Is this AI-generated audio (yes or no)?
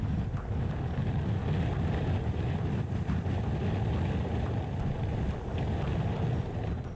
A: no